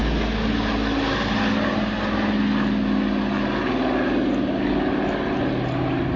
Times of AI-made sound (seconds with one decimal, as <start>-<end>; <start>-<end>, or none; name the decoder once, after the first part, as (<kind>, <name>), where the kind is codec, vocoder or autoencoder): none

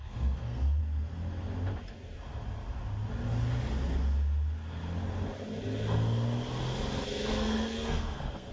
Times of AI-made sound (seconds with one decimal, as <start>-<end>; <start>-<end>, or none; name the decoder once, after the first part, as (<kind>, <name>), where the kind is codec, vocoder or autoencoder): 0.0-0.8 (codec, SNAC); 7.3-8.5

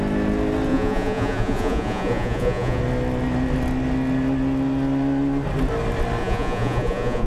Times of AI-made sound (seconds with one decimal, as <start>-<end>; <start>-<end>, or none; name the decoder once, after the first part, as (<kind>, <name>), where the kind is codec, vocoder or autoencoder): 0.7-2.8 (vocoder, Vocos); 6.2-7.3

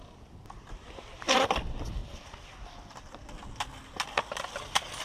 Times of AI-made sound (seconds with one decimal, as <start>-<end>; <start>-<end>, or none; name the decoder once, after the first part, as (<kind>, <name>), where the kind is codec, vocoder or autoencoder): none